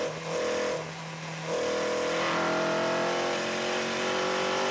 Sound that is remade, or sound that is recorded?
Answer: recorded